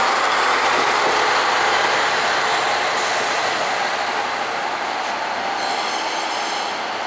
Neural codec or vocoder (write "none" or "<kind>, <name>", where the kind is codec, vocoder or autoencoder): none